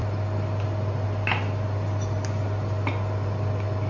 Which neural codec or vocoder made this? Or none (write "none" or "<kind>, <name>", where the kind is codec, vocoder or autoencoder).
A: none